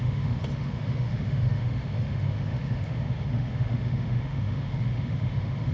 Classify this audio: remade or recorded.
remade